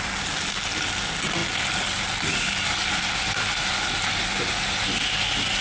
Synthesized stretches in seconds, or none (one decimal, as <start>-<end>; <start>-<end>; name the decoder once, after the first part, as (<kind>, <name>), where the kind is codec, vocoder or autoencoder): none